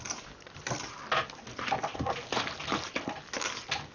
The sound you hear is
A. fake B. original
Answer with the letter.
B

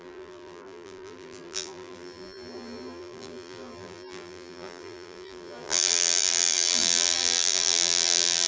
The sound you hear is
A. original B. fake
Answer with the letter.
B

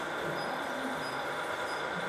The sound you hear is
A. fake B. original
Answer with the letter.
B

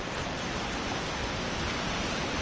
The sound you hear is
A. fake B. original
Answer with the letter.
B